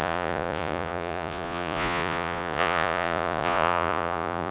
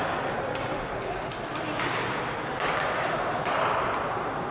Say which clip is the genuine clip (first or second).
second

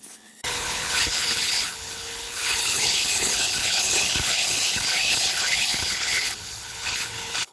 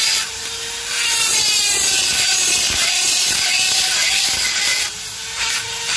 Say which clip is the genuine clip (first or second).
second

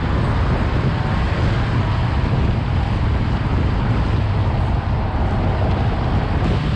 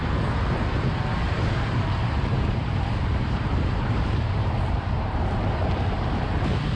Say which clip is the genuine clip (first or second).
first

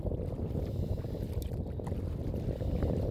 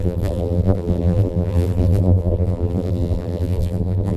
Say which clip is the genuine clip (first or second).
first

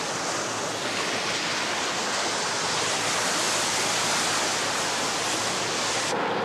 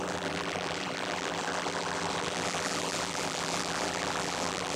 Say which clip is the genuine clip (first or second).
first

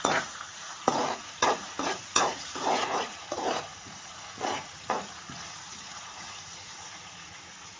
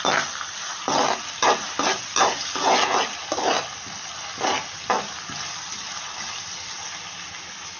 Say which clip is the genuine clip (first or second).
second